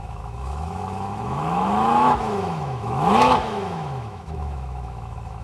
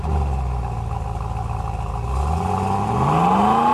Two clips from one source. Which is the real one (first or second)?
second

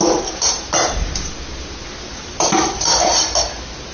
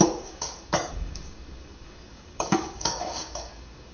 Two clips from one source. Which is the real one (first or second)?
first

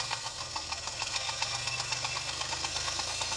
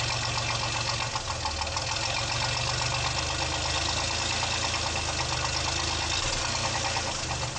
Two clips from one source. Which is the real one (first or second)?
second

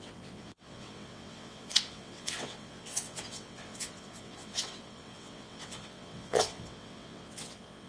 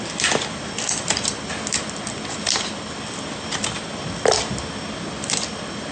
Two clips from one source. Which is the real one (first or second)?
second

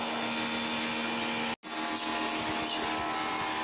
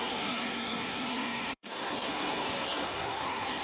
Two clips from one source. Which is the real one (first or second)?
first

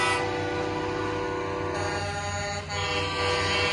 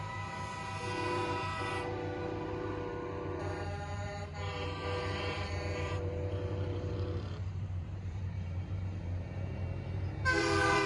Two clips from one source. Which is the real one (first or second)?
first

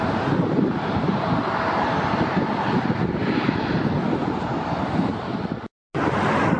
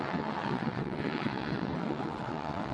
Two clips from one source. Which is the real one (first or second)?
first